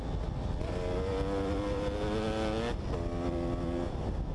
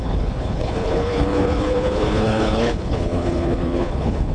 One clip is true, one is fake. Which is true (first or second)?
first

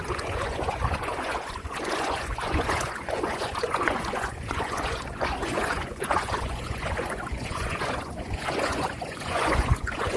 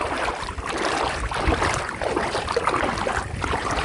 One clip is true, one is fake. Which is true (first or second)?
second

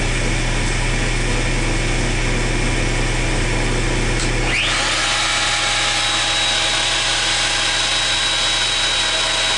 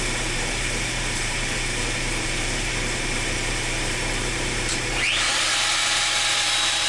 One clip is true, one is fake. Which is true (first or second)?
first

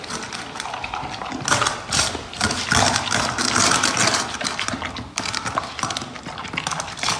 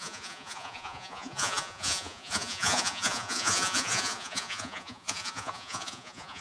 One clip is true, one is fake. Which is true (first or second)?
first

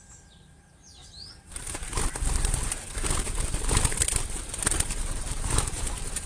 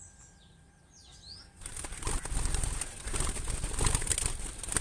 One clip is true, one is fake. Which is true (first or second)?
second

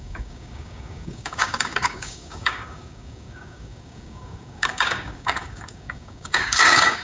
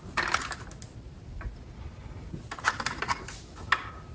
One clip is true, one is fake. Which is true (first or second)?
second